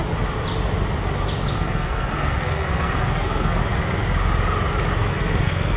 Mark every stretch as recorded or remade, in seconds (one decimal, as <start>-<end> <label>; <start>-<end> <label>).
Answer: 0.0-1.5 recorded; 1.5-3.6 remade; 3.6-5.1 recorded; 5.1-5.8 remade